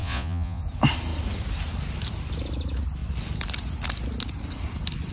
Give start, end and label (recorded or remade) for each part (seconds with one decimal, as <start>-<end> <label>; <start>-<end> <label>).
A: 0.0-0.6 remade; 0.6-5.1 recorded